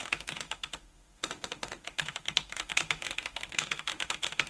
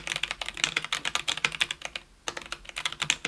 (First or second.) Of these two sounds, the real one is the second